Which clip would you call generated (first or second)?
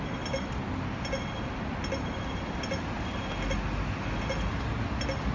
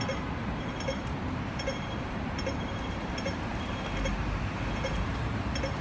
second